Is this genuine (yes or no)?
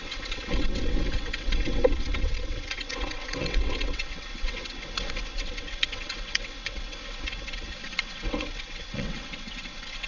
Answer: no